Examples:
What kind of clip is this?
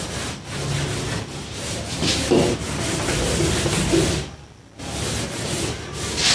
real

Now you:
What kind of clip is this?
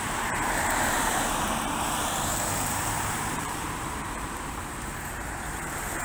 fake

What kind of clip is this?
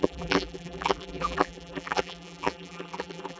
fake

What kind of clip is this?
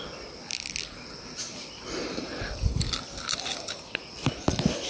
fake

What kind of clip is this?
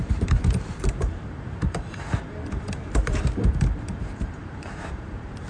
fake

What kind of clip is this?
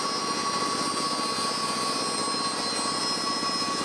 real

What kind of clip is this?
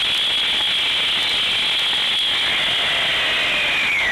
real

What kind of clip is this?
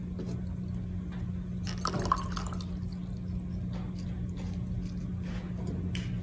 real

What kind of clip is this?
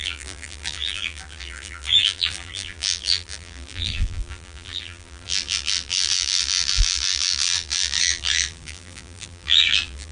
fake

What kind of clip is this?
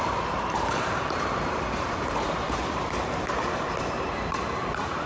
fake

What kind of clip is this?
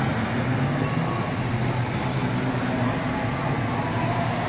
real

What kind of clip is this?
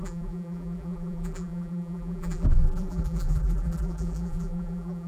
fake